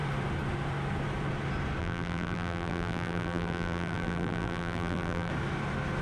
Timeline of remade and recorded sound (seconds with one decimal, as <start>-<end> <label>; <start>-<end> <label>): 0.0-1.8 recorded; 1.8-5.3 remade; 5.3-6.0 recorded